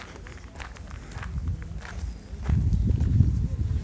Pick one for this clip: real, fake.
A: real